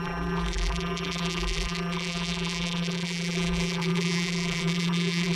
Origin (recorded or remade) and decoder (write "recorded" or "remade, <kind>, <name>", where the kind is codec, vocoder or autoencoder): remade, vocoder, BigVGAN v2